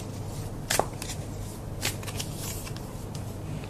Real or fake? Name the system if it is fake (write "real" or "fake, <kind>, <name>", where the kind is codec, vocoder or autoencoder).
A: real